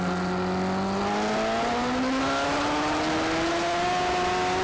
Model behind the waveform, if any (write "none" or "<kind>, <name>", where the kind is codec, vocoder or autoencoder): none